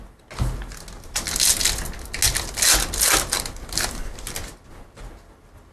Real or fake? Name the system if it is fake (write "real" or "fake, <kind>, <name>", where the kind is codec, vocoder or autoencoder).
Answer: real